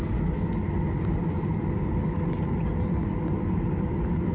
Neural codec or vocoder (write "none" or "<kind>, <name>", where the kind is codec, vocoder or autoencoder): none